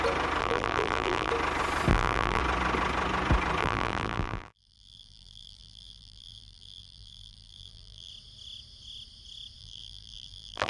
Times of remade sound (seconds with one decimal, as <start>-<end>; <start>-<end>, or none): 0.4-1.3; 1.9-2.4; 3.6-8.1; 9.6-10.7

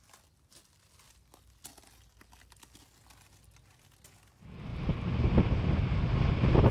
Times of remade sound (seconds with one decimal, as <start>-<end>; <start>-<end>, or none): none

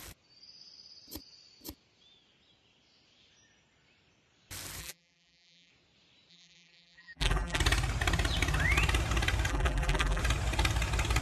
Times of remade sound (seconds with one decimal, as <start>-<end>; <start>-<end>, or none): 4.8-5.7; 6.3-7.6; 9.5-10.2

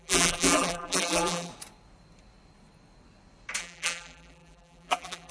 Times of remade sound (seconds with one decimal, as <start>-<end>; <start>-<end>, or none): 0.0-1.5; 3.6-5.3

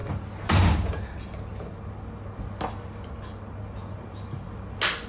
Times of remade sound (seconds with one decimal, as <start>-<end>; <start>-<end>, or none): none

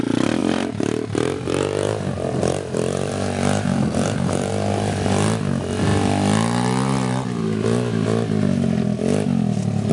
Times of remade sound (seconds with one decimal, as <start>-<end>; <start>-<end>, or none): 0.4-4.5